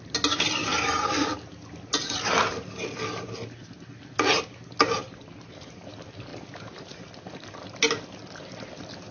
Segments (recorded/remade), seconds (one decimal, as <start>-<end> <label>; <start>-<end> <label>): 0.0-5.0 recorded; 5.0-5.6 remade; 5.6-6.3 recorded; 6.3-7.1 remade; 7.1-9.1 recorded